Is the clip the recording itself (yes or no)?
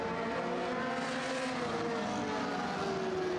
yes